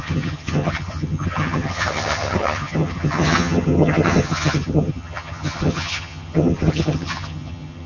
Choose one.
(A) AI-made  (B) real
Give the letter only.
A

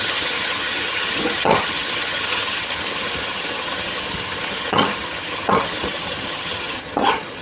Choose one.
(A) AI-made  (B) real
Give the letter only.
A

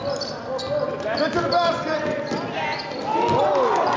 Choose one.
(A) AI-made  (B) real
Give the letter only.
B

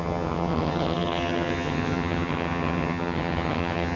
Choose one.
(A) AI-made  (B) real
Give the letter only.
A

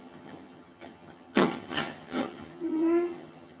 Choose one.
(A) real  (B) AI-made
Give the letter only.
B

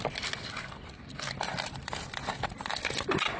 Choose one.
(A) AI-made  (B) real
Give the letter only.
B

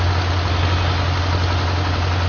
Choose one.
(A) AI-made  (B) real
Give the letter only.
B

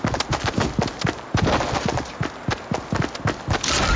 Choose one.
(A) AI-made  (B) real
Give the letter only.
B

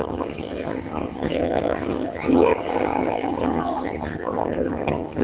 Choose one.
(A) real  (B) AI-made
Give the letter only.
B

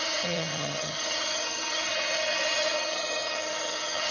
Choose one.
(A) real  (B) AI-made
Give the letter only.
B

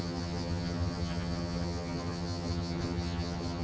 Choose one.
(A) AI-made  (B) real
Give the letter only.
A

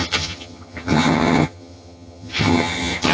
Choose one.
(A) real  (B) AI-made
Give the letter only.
B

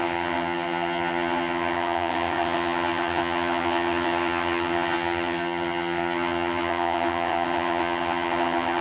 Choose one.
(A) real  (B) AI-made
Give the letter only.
B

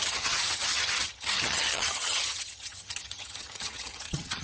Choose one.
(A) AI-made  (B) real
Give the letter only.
A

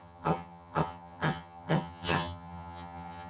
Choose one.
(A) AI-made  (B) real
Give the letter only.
A